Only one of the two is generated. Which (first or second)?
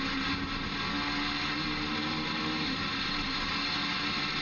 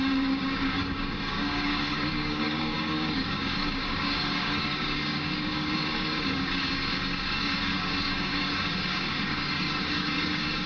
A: second